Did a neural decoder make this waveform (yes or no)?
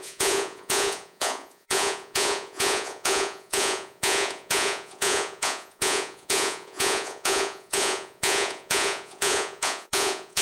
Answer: yes